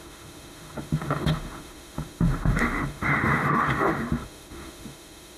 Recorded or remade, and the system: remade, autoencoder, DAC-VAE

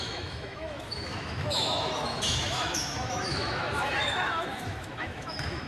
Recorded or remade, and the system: remade, autoencoder, DAC-VAE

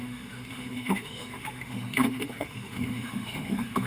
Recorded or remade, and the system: remade, autoencoder, DAC-VAE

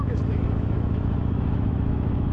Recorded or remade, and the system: remade, autoencoder, DAC-VAE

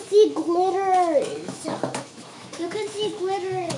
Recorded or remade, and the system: remade, autoencoder, DAC-VAE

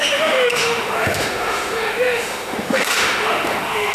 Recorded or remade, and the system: remade, autoencoder, DAC-VAE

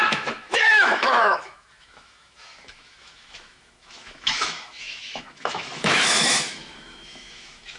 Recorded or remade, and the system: remade, autoencoder, DAC-VAE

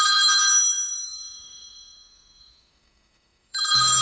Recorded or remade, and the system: remade, autoencoder, DAC-VAE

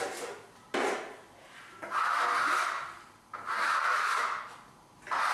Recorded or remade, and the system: recorded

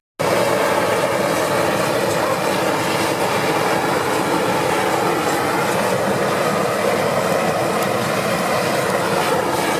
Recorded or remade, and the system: recorded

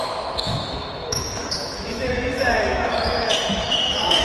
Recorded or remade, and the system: remade, autoencoder, DAC-VAE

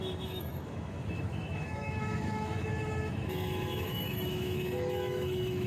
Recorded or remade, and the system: remade, autoencoder, DAC-VAE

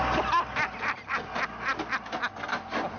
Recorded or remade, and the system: recorded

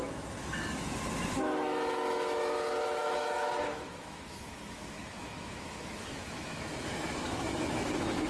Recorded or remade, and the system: remade, autoencoder, DAC-VAE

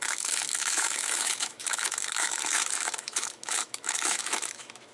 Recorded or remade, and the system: remade, autoencoder, DAC-VAE